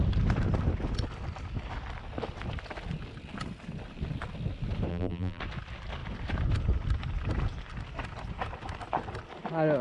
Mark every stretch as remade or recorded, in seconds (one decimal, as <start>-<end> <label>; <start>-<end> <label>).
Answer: 0.0-4.9 recorded; 4.9-5.4 remade; 5.4-9.8 recorded